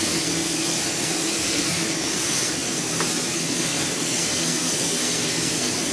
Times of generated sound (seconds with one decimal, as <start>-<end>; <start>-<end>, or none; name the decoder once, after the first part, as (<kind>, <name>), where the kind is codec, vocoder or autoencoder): 0.0-5.9 (codec, SNAC)